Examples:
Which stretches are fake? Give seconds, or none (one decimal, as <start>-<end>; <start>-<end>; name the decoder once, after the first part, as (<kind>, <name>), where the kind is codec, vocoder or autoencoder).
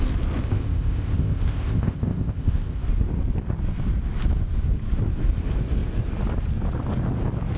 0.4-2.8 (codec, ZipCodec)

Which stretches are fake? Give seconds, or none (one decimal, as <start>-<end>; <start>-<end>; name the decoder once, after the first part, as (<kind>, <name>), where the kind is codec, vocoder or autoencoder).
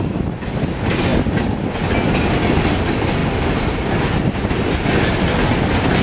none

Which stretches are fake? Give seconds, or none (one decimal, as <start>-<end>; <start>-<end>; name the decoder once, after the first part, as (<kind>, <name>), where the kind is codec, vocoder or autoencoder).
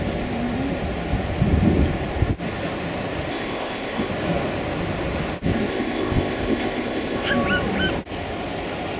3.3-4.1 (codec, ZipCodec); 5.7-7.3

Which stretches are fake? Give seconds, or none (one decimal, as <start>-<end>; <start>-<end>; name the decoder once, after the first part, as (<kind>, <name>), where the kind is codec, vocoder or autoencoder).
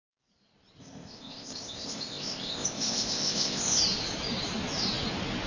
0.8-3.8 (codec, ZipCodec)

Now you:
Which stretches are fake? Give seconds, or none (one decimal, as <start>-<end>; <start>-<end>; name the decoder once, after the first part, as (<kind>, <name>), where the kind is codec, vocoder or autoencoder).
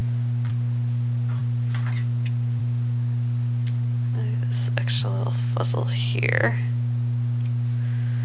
none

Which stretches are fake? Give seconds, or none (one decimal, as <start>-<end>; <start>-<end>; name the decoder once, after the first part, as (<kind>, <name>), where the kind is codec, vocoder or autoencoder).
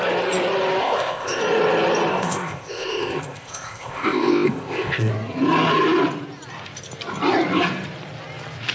0.8-1.4 (codec, ZipCodec); 2.1-5.1